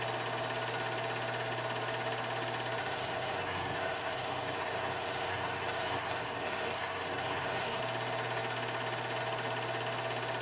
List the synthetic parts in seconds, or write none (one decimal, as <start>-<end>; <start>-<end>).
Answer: 2.8-7.8